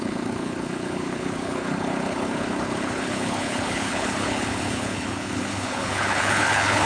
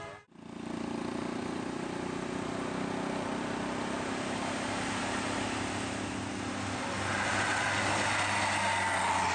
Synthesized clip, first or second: first